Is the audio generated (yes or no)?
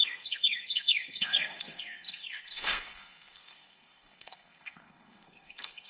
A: yes